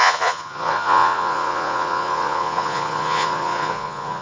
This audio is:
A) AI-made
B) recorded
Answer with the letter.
A